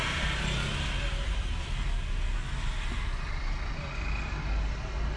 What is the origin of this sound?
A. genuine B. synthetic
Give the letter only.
A